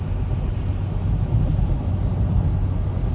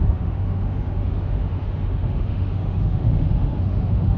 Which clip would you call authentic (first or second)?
first